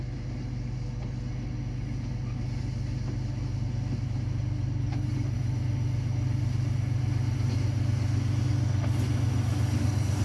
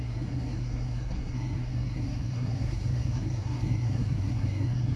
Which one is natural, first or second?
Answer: first